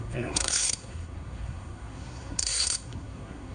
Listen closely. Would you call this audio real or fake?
fake